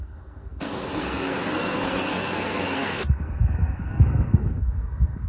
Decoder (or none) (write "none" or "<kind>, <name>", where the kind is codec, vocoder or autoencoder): codec, SNAC